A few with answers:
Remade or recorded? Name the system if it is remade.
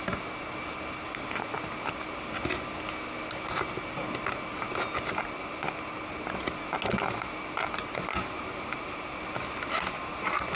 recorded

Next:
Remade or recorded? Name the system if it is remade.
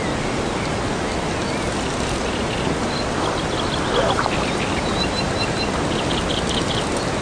recorded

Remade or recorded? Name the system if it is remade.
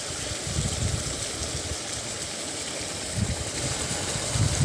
recorded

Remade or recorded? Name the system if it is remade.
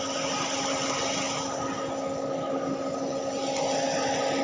recorded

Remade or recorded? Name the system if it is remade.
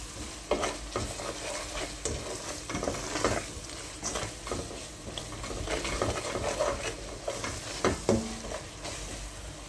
recorded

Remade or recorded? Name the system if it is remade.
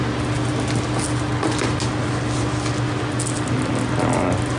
recorded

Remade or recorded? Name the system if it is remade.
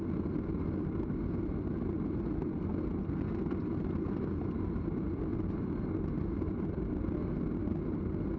recorded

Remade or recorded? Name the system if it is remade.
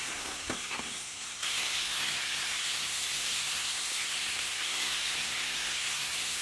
remade, codec, SNAC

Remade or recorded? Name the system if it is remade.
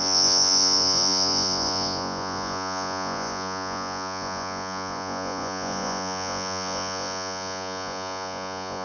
remade, vocoder, Vocos